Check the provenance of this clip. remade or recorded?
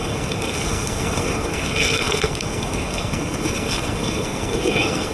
remade